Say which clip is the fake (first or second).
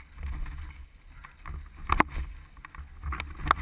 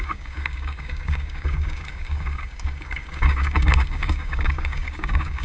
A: second